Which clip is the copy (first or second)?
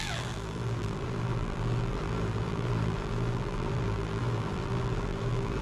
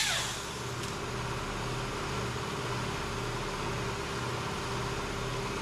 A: first